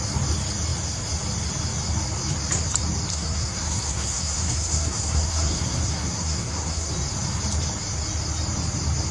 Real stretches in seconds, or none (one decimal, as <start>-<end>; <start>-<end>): 0.0-3.1; 6.9-9.1